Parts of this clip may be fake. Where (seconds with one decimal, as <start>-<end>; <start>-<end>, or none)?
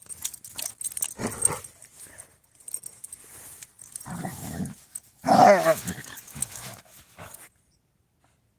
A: 4.3-7.5